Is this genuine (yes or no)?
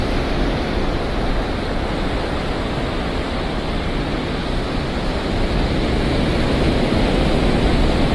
no